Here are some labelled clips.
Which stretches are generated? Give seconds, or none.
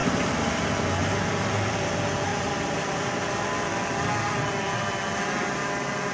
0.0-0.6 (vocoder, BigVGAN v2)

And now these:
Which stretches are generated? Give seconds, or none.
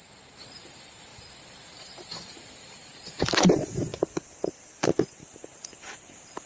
0.0-3.9 (vocoder, BigVGAN v2); 5.8-6.5